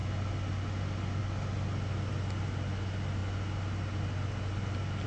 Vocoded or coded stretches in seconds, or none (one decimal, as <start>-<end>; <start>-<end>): none